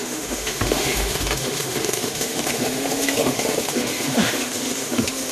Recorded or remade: remade